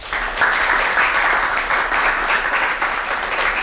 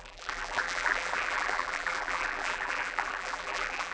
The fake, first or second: second